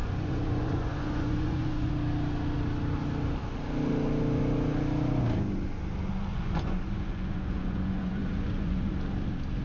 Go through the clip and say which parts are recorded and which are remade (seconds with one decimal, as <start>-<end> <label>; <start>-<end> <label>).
0.0-1.9 remade; 1.9-6.3 recorded; 6.3-8.9 remade; 8.9-9.6 recorded